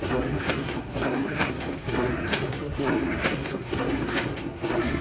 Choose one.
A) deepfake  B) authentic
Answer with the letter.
A